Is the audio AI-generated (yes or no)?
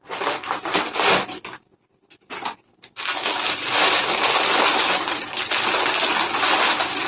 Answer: no